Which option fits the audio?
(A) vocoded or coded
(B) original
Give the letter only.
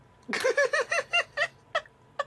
B